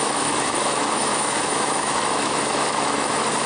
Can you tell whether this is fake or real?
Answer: fake